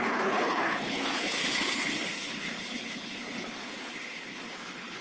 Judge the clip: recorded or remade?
remade